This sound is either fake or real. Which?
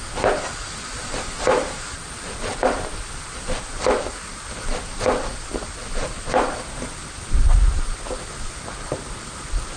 real